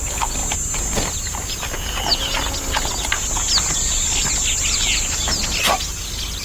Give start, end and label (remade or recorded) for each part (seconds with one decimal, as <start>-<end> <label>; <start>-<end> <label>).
0.0-6.4 recorded